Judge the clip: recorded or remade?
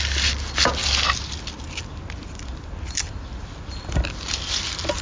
recorded